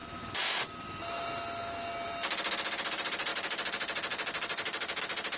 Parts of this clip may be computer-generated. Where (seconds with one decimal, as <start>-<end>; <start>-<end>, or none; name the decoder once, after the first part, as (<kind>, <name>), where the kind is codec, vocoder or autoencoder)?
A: none